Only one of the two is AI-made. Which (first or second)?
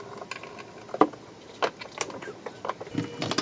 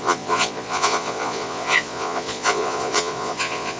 second